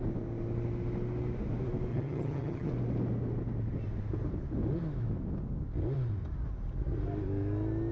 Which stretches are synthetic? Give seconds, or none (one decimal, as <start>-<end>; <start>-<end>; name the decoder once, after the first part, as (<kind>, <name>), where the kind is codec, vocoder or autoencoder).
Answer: 1.9-2.7 (vocoder, HiFi-GAN)